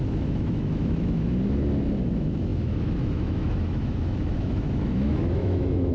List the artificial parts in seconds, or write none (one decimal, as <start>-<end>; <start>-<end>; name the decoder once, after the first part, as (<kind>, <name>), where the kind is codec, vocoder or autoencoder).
0.0-1.3 (autoencoder, DAC-VAE); 2.0-5.9